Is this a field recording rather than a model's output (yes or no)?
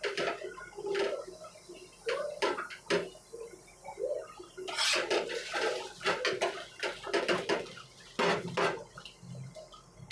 yes